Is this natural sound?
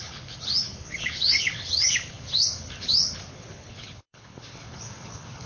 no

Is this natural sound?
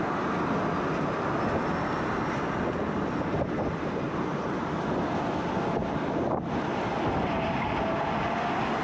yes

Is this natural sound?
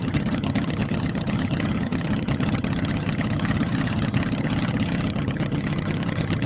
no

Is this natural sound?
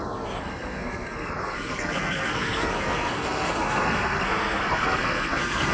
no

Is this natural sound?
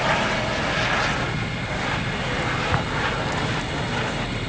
yes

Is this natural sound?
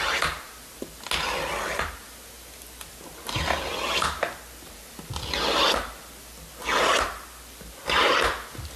yes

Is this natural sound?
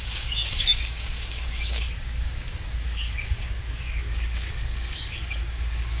no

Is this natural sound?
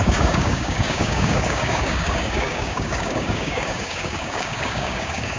no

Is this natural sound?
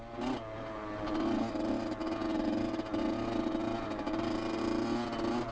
yes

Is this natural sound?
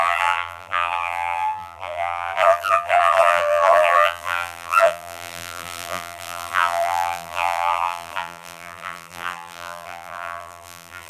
no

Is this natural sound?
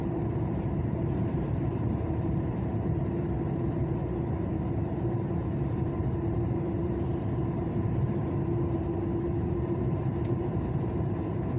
no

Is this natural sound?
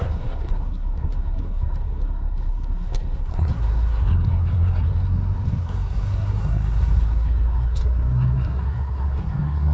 no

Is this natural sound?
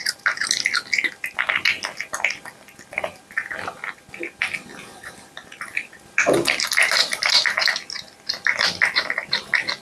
yes